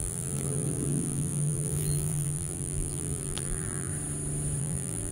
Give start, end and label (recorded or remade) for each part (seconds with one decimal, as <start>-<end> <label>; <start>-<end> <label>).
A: 0.0-3.9 remade; 3.9-4.6 recorded; 4.6-5.1 remade